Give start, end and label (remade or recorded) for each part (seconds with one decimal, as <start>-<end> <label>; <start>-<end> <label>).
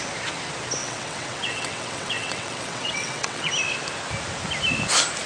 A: 0.0-0.8 recorded; 0.8-3.5 remade; 3.5-5.3 recorded